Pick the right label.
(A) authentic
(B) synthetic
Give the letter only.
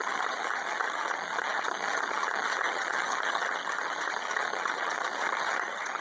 B